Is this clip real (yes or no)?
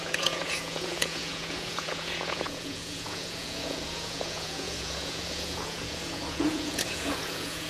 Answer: no